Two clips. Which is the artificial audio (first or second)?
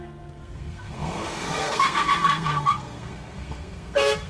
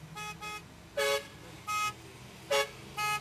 first